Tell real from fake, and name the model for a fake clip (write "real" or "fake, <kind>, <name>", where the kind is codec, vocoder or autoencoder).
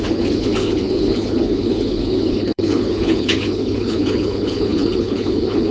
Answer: fake, codec, HILCodec